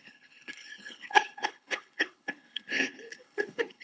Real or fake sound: fake